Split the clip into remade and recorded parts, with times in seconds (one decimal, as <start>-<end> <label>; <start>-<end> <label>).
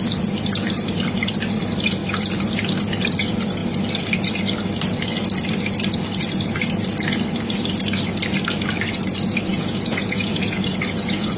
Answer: 0.0-9.5 recorded; 9.5-11.4 remade